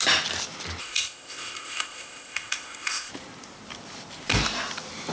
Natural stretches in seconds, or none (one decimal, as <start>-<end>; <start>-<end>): 0.0-0.8; 3.1-5.1